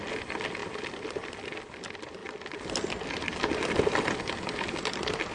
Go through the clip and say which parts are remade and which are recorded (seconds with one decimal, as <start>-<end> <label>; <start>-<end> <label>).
0.0-5.3 recorded